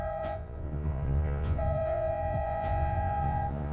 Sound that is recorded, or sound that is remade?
remade